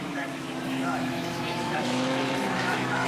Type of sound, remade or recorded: remade